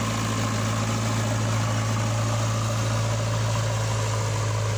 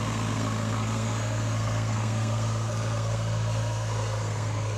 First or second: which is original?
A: first